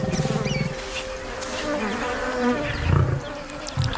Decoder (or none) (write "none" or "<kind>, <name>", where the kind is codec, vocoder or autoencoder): none